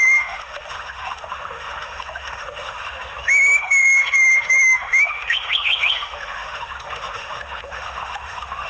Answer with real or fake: fake